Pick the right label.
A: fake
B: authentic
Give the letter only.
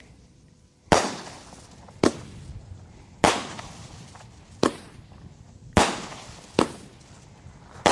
B